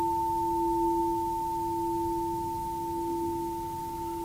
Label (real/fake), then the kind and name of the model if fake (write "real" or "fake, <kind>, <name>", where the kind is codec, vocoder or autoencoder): real